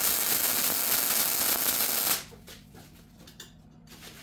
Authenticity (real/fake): real